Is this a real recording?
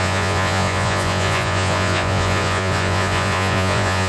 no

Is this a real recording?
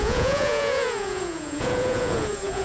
no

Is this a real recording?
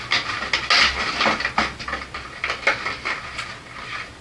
yes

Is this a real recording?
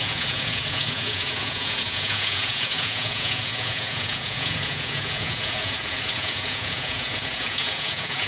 no